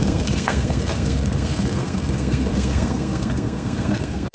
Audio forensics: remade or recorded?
remade